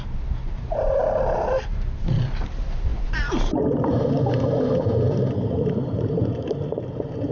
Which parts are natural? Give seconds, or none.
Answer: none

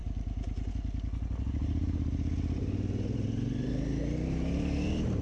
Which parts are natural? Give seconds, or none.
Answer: 0.0-1.6; 3.7-5.2